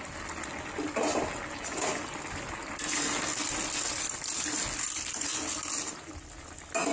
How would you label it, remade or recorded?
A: recorded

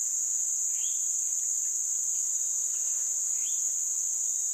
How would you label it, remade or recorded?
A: recorded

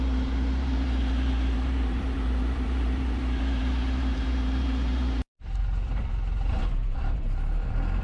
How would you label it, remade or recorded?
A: remade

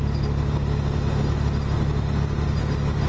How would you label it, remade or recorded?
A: recorded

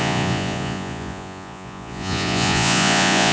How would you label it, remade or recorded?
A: remade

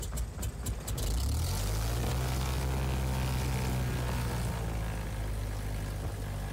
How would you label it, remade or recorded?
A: recorded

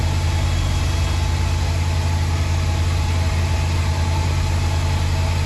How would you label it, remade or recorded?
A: recorded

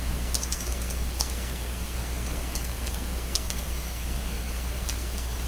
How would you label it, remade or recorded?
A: remade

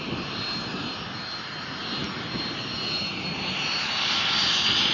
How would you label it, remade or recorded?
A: recorded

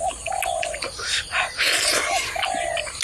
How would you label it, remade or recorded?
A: recorded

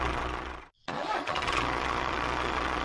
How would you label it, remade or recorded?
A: remade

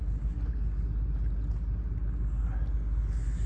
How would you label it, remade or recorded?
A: recorded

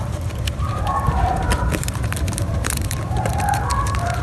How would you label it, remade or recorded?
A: remade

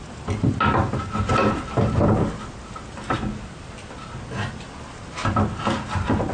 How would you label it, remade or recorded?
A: recorded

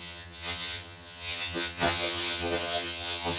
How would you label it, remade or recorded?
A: remade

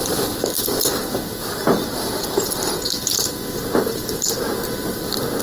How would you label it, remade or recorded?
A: remade